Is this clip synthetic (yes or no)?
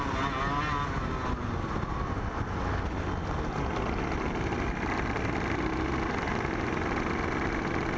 no